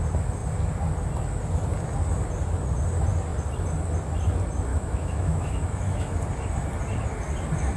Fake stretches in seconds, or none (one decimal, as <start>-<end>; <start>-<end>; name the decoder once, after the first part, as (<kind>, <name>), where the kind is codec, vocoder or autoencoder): 4.7-6.1 (autoencoder, DAC-VAE)